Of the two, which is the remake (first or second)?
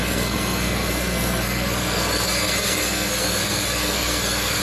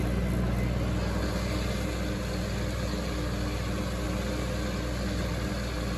first